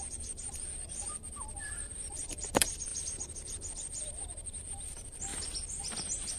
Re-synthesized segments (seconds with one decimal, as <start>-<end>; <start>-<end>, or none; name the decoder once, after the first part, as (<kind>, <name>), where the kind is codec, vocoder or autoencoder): 0.0-2.9 (vocoder, BigVGAN v2); 4.1-5.3